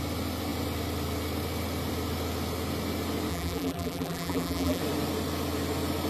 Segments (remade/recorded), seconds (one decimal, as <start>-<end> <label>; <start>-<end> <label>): 0.0-3.3 recorded; 3.3-4.8 remade; 4.8-6.1 recorded

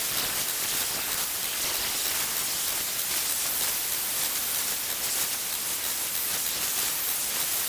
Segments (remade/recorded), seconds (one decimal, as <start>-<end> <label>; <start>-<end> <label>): 0.0-7.7 recorded